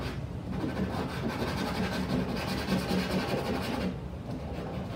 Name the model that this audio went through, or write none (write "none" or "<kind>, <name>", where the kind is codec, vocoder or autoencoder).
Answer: none